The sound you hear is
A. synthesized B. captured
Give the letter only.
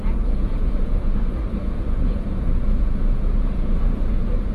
A